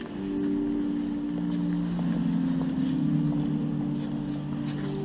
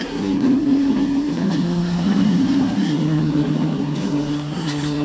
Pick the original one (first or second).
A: first